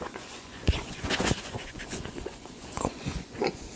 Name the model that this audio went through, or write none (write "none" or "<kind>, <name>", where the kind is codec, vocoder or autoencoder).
vocoder, Vocos